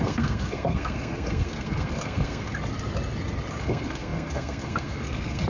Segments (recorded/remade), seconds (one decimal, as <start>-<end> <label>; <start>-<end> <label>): 0.0-2.5 remade; 2.5-3.6 recorded; 3.6-5.5 remade